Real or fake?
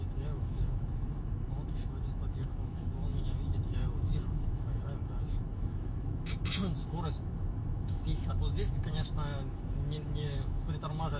fake